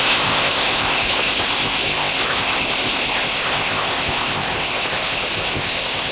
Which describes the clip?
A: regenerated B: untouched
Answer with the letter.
A